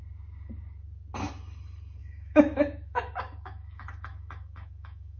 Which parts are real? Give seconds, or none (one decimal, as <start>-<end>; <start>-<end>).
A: 0.0-2.0